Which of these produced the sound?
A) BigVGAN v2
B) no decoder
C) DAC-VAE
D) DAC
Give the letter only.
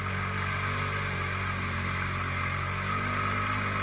B